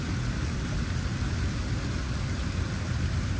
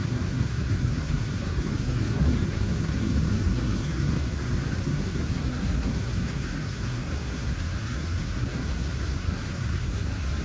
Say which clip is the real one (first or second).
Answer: first